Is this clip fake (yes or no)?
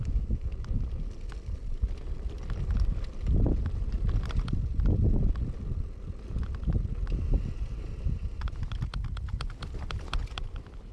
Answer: no